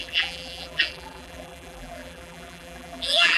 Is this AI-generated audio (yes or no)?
yes